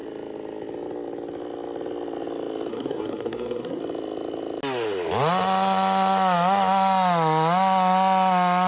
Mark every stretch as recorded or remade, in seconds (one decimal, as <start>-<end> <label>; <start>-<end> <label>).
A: 0.0-2.7 recorded; 2.7-3.8 remade; 3.8-8.7 recorded